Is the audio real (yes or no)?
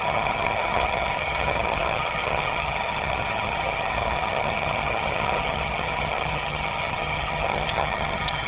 no